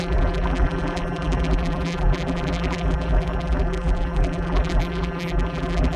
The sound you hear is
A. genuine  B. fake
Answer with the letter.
B